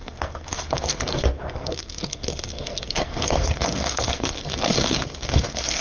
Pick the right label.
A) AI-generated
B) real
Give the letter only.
A